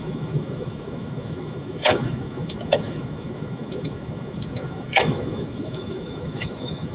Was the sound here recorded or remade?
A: remade